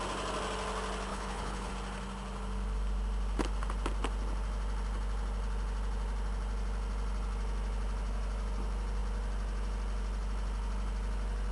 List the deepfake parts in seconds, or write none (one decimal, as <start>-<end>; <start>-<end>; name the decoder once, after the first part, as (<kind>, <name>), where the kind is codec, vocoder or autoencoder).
1.1-1.7 (codec, HILCodec)